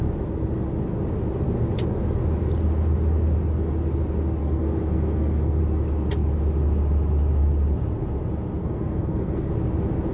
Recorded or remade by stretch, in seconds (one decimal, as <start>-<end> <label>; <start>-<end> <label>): 0.0-4.4 recorded; 4.4-5.6 remade; 5.6-8.6 recorded; 8.6-9.5 remade; 9.5-10.1 recorded